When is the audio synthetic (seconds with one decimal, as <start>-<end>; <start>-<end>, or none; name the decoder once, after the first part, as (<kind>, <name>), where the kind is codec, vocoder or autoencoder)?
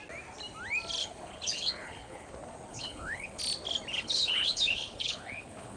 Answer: 1.0-2.3 (codec, HILCodec); 2.7-3.4; 3.9-5.8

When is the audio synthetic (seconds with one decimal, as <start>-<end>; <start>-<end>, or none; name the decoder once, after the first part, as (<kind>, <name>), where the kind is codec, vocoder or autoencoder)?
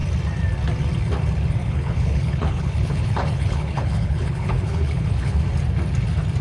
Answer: 1.6-5.4 (codec, HILCodec)